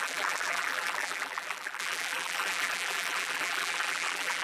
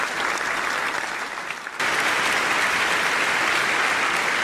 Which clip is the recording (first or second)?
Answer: second